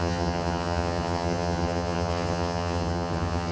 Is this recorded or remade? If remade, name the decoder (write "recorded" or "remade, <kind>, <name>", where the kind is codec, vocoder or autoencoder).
remade, vocoder, HiFi-GAN